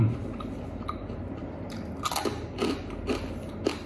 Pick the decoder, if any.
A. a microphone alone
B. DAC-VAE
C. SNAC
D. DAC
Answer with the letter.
A